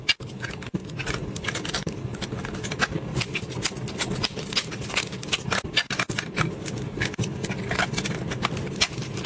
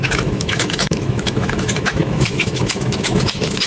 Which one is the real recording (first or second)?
first